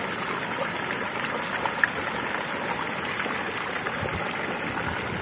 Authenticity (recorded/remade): recorded